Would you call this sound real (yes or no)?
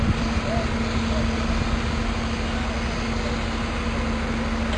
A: yes